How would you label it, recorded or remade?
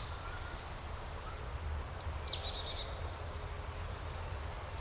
recorded